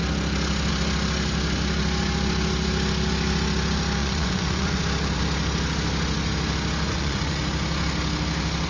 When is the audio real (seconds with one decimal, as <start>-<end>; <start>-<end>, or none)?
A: 0.0-4.0; 4.8-6.9; 7.4-8.7